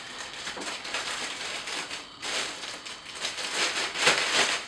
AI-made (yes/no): yes